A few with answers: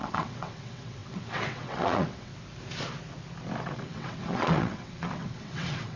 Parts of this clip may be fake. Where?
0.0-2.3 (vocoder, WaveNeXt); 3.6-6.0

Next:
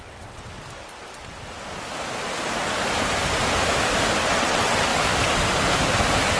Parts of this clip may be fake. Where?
0.0-0.5 (vocoder, WaveNeXt); 4.3-4.9